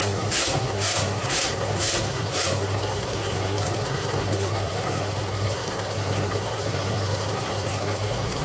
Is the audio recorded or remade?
remade